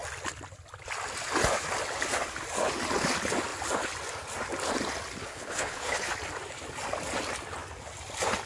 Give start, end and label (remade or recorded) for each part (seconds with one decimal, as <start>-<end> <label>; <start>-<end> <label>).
0.0-5.2 recorded; 5.2-6.1 remade; 6.1-8.5 recorded